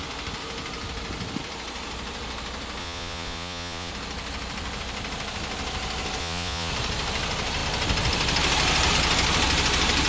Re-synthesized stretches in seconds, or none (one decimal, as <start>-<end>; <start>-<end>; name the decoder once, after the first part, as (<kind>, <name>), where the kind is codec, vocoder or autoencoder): 2.8-3.9 (vocoder, Vocos); 6.2-6.7